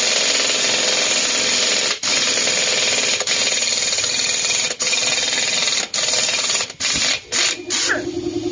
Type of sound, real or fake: real